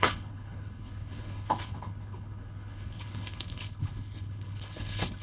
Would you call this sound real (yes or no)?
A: no